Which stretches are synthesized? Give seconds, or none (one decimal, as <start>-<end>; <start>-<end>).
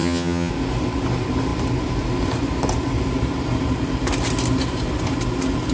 0.0-0.5